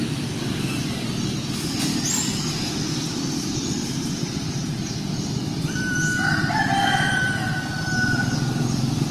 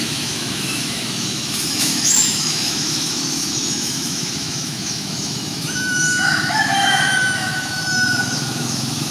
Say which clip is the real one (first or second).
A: first